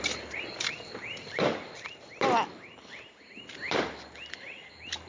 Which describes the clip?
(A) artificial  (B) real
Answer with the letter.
B